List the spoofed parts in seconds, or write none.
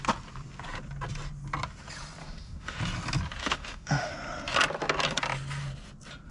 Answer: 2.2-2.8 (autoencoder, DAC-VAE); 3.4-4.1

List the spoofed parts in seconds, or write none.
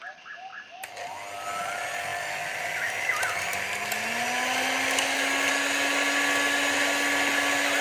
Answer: none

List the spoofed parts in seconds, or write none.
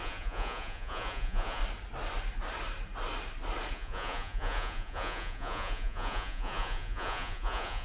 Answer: 0.0-1.6 (vocoder, Vocos); 3.7-7.8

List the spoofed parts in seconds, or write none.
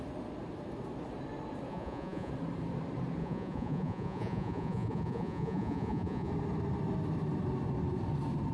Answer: 1.7-2.3 (vocoder, Vocos); 3.2-6.3